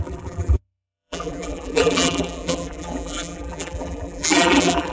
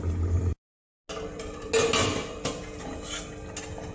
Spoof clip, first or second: first